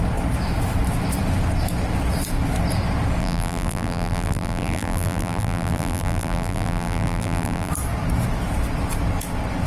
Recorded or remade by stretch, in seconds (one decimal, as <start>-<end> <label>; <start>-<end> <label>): 0.0-3.2 recorded; 3.2-7.7 remade; 7.7-9.7 recorded